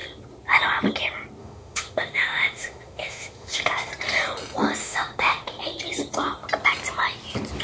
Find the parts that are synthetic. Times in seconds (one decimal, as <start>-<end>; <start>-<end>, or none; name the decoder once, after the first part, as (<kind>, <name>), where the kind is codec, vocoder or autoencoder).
1.4-3.9 (autoencoder, DAC-VAE); 4.8-5.6